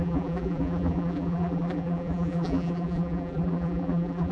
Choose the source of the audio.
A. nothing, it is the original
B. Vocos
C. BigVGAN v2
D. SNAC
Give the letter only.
C